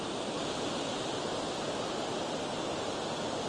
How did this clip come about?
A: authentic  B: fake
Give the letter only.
A